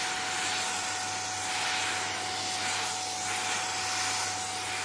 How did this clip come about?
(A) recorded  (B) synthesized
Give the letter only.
A